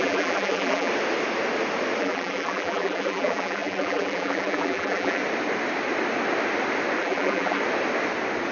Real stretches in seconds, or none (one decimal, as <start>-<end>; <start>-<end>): 0.9-2.0; 5.2-7.0; 7.6-8.5